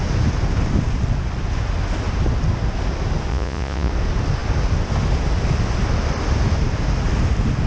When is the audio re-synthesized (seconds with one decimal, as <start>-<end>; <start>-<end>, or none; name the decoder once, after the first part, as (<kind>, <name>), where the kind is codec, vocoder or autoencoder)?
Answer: 3.3-3.9 (vocoder, Vocos)